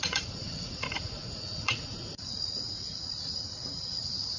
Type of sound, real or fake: fake